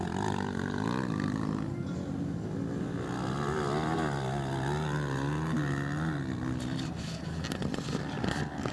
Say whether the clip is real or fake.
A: real